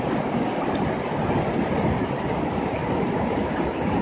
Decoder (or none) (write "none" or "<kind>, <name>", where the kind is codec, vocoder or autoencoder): none